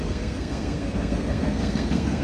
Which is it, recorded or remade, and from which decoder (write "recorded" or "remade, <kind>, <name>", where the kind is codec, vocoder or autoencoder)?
remade, codec, SNAC